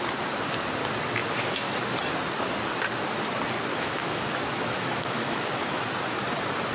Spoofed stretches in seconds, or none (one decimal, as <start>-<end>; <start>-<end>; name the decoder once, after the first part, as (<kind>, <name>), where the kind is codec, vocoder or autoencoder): 3.7-5.8 (autoencoder, DAC-VAE)